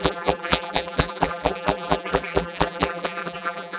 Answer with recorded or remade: remade